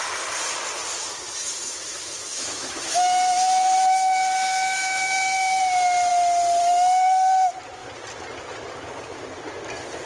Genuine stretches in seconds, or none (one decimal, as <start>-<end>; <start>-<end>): 0.0-1.4; 5.6-10.1